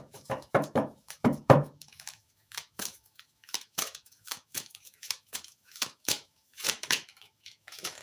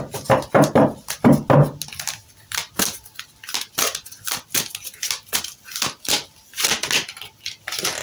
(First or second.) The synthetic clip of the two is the first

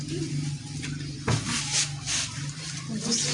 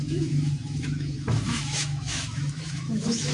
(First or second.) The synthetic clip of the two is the second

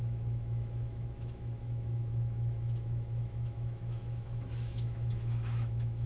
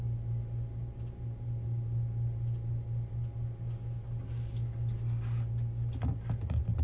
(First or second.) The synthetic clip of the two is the first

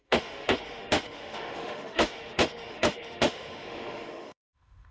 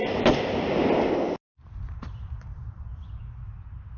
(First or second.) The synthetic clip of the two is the first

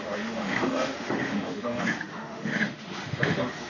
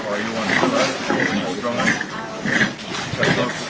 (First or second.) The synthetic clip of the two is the first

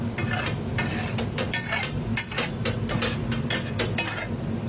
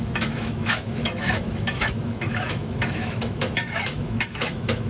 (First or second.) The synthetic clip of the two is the second